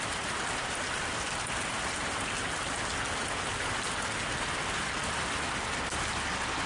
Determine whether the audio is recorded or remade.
recorded